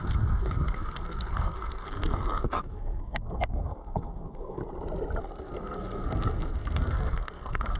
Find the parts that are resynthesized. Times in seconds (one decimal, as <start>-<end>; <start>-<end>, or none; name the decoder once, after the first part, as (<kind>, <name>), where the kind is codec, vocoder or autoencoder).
0.0-4.6 (codec, SNAC); 5.2-7.8